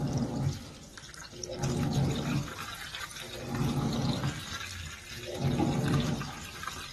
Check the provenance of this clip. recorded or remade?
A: recorded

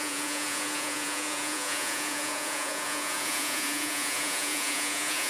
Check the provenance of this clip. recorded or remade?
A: remade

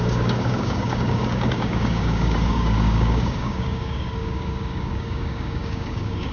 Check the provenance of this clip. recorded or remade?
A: remade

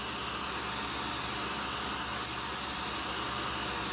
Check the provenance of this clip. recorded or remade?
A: recorded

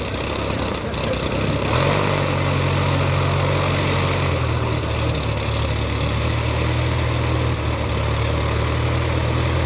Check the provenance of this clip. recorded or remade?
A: recorded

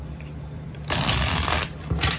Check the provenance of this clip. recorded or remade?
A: remade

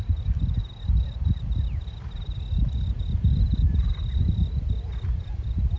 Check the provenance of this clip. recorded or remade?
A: recorded